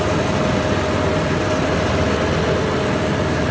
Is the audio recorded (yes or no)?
yes